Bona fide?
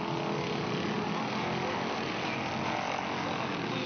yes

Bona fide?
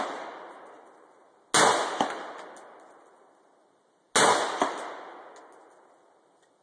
yes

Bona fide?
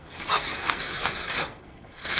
no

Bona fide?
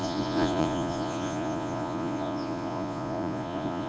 no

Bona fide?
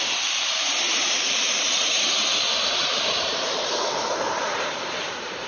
no